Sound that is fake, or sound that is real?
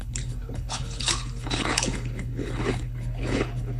fake